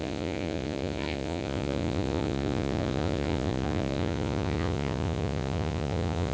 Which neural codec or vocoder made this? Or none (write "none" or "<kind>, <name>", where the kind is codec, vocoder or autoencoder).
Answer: vocoder, Vocos